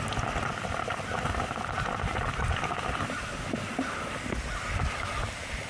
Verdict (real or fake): real